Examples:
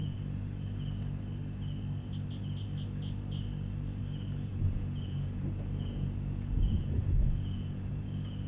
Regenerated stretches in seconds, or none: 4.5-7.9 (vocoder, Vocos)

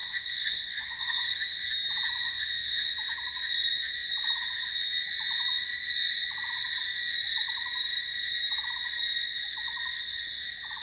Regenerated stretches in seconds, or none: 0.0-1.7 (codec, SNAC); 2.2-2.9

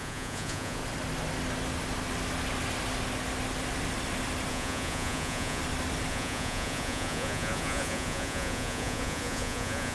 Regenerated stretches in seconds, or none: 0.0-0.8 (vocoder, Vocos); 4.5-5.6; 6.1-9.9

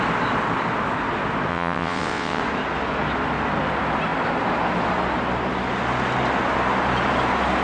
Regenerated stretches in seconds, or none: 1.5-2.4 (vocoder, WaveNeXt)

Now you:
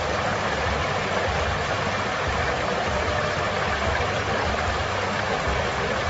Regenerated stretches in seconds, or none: none

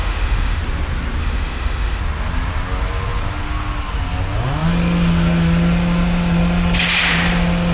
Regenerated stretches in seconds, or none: 0.0-0.6 (autoencoder, DAC-VAE); 1.2-2.0

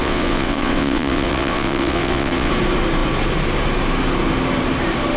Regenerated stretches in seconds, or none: 0.0-2.5 (vocoder, WaveNeXt)